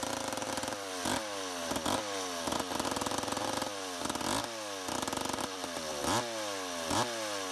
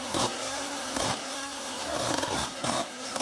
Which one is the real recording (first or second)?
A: first